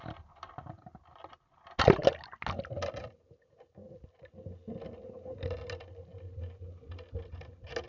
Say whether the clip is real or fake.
real